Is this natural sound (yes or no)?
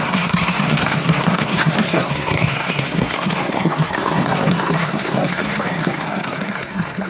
no